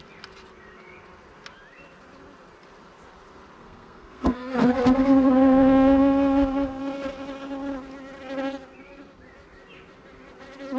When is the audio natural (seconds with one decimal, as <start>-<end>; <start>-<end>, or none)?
0.0-3.6; 6.8-10.8